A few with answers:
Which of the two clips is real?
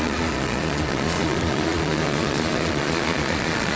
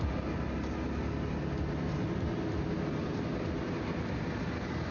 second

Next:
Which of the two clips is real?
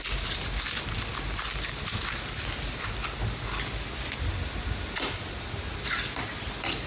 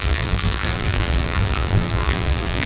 first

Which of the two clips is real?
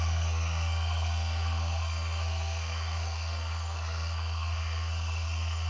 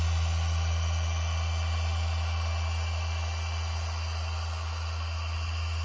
second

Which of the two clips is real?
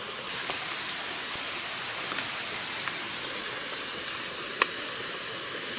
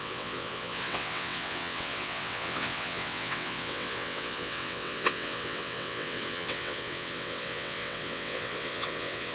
first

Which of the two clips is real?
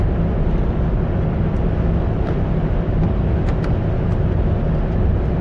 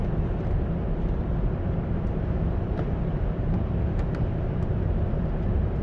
first